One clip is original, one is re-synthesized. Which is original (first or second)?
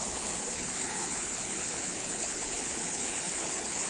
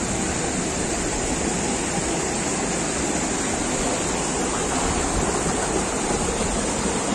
second